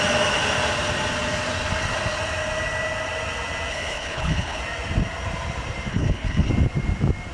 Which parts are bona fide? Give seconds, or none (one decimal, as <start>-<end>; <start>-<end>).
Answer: 0.0-3.7; 4.6-5.9; 6.5-7.3